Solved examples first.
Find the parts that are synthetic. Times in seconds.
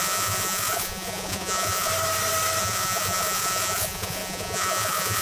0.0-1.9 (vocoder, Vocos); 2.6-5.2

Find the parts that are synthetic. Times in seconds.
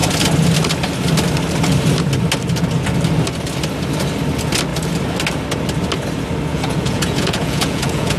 6.5-8.2 (vocoder, Vocos)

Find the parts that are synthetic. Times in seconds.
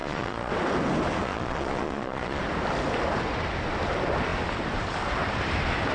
0.0-0.5 (vocoder, Vocos); 1.2-2.4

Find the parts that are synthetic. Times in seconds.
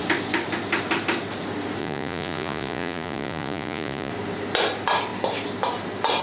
1.8-4.1 (vocoder, Vocos)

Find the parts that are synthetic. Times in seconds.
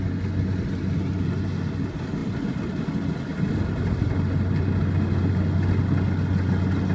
none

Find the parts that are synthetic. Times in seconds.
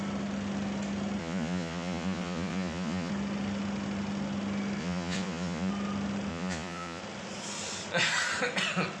1.2-3.1 (vocoder, Vocos); 4.8-5.7; 6.3-7.0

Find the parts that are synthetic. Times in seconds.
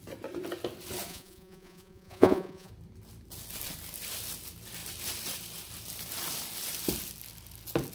1.1-2.7 (vocoder, Vocos)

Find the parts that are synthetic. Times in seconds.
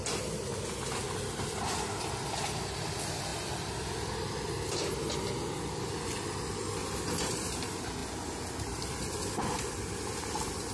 none